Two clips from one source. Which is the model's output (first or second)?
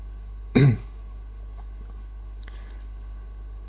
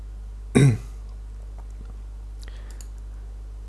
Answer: first